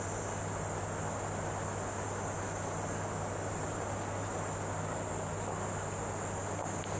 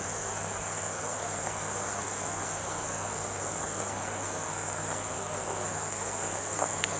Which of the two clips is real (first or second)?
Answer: first